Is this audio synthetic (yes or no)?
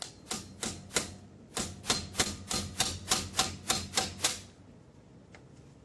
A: no